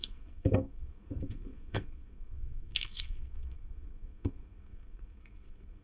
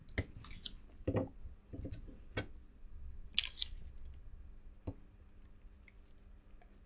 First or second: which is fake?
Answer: first